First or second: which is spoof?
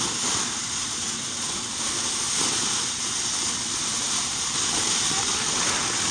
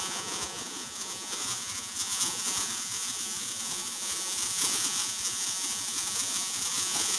second